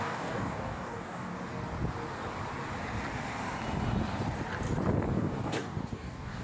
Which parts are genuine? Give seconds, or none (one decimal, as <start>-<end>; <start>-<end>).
1.3-5.1